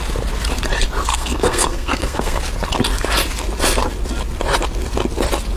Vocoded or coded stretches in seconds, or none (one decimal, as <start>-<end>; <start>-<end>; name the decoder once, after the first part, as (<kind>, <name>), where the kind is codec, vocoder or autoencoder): 1.1-2.4 (codec, SNAC)